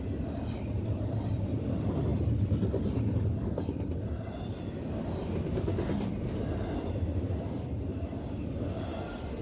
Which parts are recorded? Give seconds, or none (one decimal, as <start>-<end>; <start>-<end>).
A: 2.1-6.7